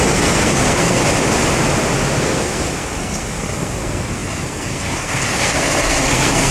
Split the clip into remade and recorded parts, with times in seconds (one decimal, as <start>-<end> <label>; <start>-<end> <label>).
0.0-1.0 remade; 1.0-2.2 recorded; 2.2-6.5 remade